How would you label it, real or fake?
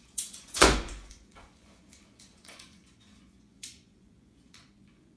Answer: fake